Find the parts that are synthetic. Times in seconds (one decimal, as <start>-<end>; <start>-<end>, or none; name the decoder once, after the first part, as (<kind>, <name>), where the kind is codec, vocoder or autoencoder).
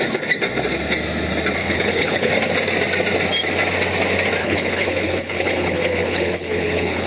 1.6-2.3 (codec, HILCodec); 4.4-7.1